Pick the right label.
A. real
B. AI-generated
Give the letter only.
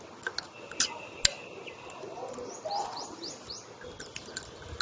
A